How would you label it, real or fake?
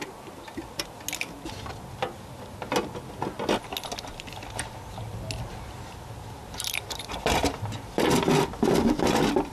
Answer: real